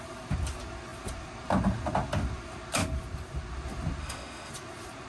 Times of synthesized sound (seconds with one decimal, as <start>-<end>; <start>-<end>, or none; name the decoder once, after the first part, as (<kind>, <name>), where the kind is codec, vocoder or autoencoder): 4.0-4.5 (autoencoder, DAC-VAE)